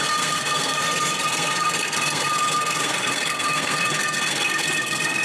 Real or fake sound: fake